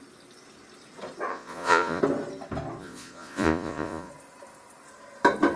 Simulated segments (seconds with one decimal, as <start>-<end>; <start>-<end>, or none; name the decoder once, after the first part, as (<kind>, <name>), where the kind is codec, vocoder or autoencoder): 1.3-2.0 (vocoder, Vocos); 2.8-4.1